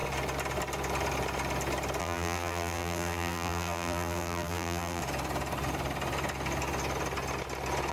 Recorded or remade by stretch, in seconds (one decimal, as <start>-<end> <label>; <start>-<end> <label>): 0.0-2.0 recorded; 2.0-5.0 remade; 5.0-7.9 recorded